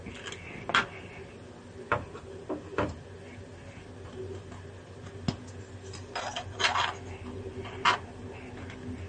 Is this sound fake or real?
real